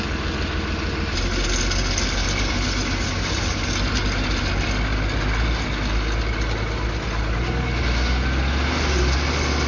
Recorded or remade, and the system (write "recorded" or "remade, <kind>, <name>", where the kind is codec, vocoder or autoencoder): recorded